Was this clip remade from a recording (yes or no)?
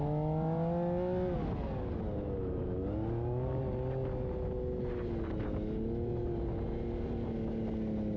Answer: no